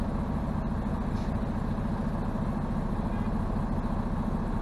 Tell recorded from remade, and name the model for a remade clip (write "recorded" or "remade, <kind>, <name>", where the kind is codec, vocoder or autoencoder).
recorded